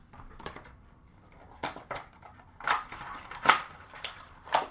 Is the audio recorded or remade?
remade